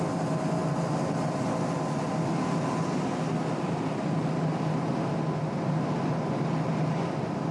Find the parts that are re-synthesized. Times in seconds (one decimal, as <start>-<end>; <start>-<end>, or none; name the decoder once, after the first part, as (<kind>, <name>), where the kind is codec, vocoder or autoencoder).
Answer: none